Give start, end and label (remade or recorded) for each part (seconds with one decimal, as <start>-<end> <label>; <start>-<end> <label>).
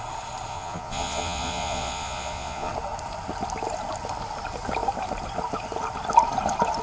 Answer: 0.0-0.5 recorded; 0.5-2.7 remade; 2.7-6.8 recorded